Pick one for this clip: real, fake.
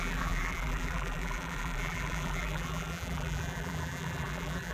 fake